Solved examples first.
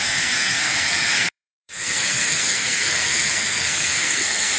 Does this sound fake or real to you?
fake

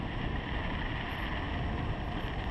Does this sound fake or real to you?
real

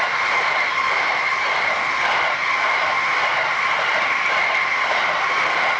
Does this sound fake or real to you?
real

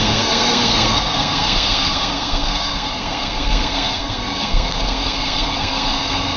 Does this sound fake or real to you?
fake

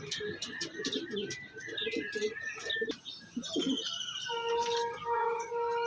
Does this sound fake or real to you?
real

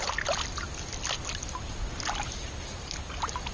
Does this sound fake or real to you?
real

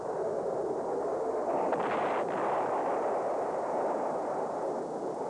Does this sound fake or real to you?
fake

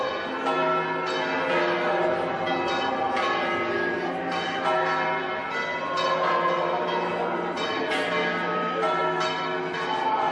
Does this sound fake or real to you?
real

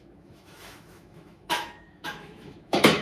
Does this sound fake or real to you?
fake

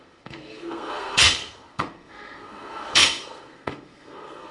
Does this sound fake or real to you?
fake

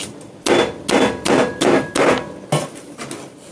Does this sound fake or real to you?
real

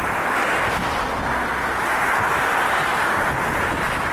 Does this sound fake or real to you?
real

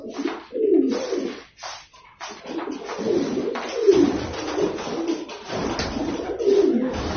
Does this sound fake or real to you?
real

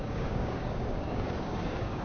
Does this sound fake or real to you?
fake